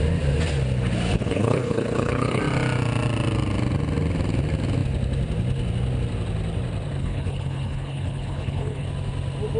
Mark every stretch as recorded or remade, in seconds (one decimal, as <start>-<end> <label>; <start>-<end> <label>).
0.0-1.1 recorded; 1.1-2.4 remade; 2.4-7.0 recorded; 7.0-8.9 remade; 8.9-9.6 recorded